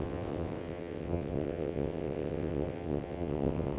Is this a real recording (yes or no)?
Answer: no